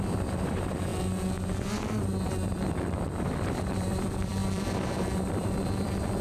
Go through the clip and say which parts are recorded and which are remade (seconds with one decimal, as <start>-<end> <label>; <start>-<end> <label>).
0.0-0.9 remade; 0.9-1.6 recorded; 1.6-6.2 remade

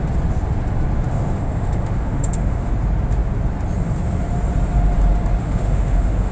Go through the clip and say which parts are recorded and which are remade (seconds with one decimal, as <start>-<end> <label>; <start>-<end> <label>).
0.0-1.1 recorded; 1.1-2.7 remade; 2.7-5.4 recorded; 5.4-6.3 remade

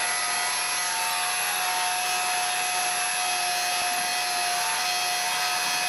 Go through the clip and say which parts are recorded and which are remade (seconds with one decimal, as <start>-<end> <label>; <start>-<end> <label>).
0.0-5.9 recorded

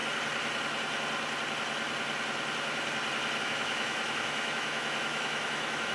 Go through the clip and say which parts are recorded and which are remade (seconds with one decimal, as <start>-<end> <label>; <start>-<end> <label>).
0.0-3.4 recorded; 3.4-5.9 remade

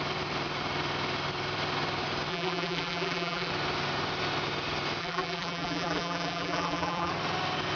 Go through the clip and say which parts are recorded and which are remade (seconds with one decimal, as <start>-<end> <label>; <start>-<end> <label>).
0.0-2.3 recorded; 2.3-3.5 remade; 3.5-5.0 recorded; 5.0-7.1 remade; 7.1-7.8 recorded

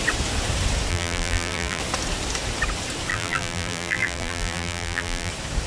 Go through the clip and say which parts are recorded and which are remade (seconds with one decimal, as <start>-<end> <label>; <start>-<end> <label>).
0.0-0.9 recorded; 0.9-1.8 remade; 1.8-3.1 recorded; 3.1-5.3 remade; 5.3-5.7 recorded